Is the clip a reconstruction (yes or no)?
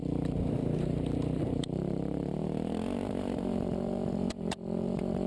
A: yes